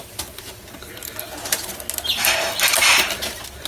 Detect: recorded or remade recorded